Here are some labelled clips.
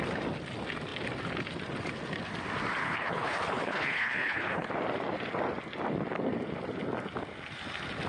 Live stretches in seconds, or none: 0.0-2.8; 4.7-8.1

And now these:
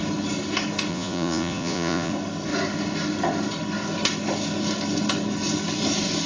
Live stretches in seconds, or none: 0.0-0.9; 2.1-6.3

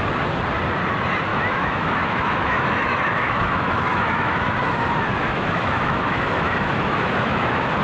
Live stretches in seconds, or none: 0.0-1.3; 4.5-5.2

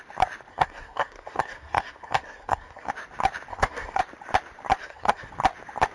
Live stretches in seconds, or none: 0.0-0.5; 2.9-3.5; 4.0-4.8; 5.3-5.9

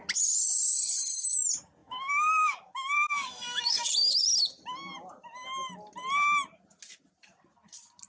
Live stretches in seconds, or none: 0.0-1.8; 3.8-8.1

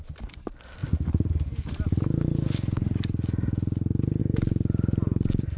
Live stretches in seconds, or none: 0.0-5.6